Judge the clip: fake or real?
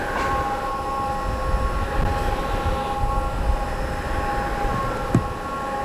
real